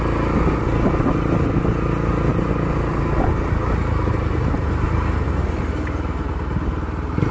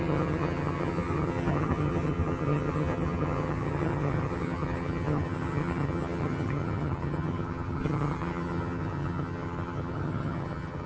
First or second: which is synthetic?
second